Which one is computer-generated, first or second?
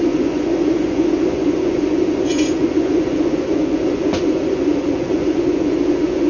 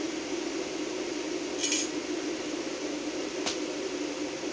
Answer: first